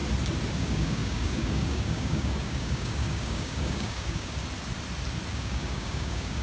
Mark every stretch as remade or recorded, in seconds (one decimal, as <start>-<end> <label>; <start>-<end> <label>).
0.0-0.5 recorded; 0.5-4.4 remade; 4.4-5.3 recorded; 5.3-6.4 remade